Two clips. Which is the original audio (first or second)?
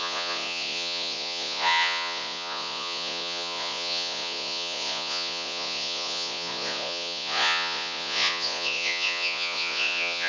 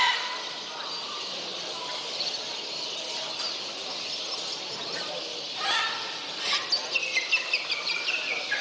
second